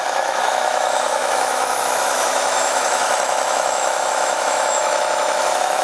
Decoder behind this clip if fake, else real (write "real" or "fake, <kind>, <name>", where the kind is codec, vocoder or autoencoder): fake, autoencoder, DAC-VAE